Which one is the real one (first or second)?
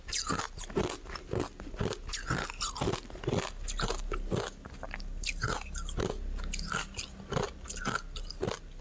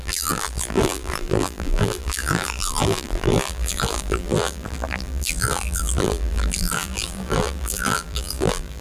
first